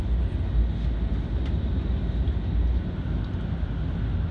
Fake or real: real